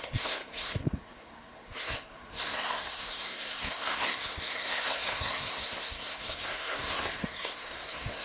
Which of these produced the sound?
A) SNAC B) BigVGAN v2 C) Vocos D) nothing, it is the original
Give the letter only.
A